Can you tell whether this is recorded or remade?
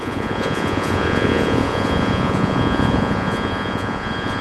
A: remade